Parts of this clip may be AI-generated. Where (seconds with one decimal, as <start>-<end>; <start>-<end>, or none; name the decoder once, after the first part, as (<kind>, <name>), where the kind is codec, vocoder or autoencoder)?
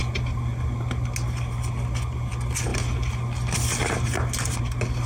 none